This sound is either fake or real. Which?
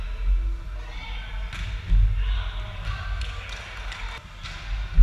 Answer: real